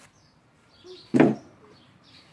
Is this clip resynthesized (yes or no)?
yes